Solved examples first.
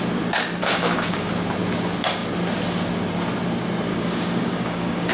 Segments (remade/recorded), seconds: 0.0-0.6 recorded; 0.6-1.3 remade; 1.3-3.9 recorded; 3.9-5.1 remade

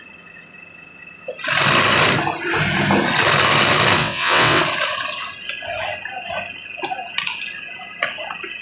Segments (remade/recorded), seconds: 0.0-4.0 recorded; 4.0-4.6 remade; 4.6-8.6 recorded